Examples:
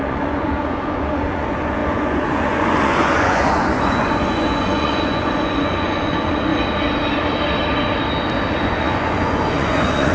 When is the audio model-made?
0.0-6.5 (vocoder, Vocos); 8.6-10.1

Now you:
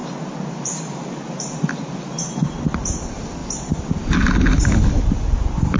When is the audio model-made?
none

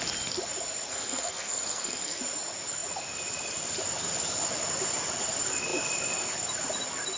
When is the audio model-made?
0.9-2.2 (codec, SNAC)

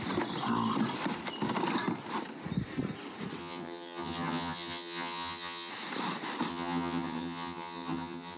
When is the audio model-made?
3.4-5.7 (vocoder, HiFi-GAN); 6.5-8.4

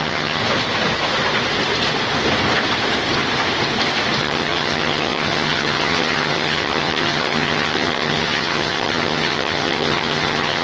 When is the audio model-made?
0.0-0.4 (vocoder, HiFi-GAN); 4.2-10.6